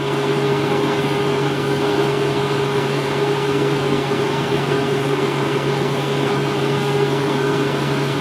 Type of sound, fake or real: fake